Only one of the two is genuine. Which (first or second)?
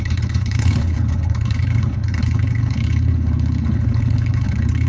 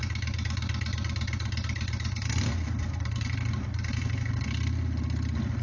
second